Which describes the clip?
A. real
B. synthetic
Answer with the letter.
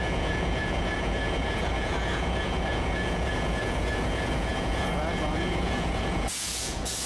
B